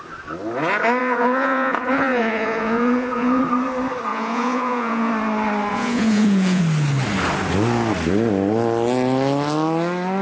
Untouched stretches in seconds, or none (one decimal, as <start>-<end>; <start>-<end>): 0.0-1.0; 3.4-4.1; 5.1-5.7; 6.6-10.2

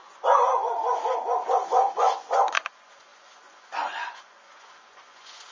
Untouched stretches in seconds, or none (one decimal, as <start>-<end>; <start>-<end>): none